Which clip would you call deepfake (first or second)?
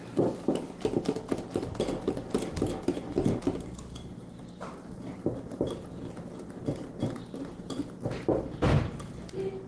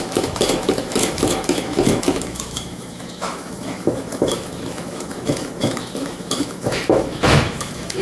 second